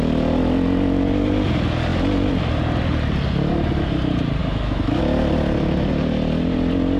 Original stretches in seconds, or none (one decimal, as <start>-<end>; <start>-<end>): 0.0-4.4; 5.0-7.0